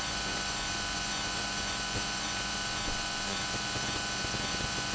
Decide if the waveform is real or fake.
fake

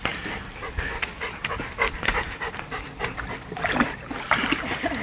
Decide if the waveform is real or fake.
real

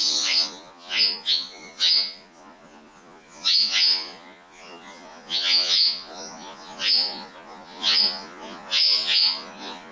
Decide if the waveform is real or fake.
fake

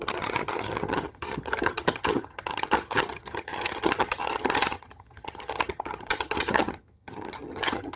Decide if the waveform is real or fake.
fake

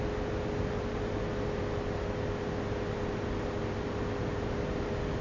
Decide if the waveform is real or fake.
real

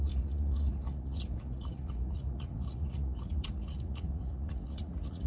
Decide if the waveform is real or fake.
fake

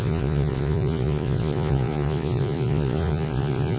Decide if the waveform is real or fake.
fake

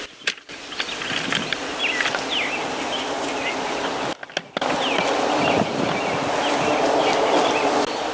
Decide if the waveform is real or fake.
real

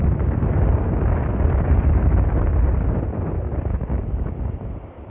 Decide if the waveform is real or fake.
real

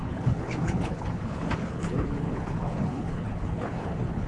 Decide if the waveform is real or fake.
fake